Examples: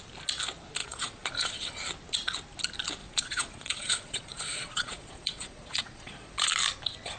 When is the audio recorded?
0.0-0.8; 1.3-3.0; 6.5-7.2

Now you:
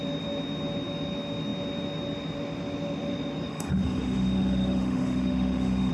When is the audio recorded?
0.0-3.5

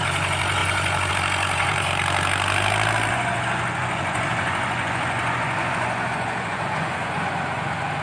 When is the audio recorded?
1.9-3.1

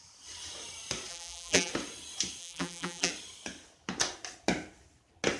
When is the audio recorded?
0.0-1.1; 1.7-2.4; 3.1-5.4